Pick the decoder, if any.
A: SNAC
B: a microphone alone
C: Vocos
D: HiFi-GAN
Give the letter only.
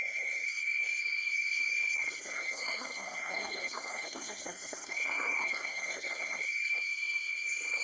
A